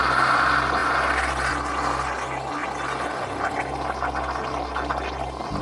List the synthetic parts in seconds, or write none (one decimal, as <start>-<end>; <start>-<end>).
none